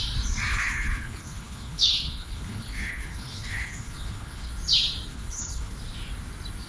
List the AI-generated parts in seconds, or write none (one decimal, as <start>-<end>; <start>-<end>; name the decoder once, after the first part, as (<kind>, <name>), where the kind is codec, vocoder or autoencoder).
0.5-4.5 (codec, HILCodec); 5.1-5.7